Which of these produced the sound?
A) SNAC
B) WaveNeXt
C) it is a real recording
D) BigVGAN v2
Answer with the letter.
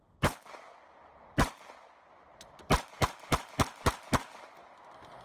C